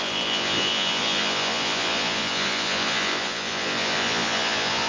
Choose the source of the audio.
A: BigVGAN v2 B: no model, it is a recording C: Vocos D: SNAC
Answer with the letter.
C